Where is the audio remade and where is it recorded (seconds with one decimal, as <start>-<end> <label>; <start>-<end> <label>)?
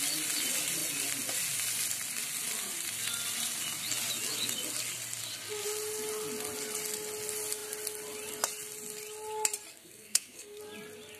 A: 0.0-9.7 recorded; 9.7-10.6 remade; 10.6-11.2 recorded